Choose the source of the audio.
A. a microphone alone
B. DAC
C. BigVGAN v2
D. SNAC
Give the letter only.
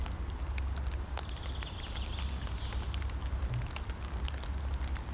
A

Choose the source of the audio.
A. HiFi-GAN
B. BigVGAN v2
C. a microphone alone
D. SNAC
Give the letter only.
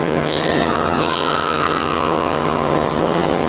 A